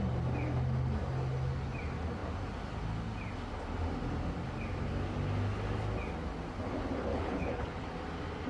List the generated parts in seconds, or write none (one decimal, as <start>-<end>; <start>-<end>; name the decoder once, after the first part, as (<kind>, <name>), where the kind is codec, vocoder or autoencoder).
7.1-7.8 (codec, HILCodec)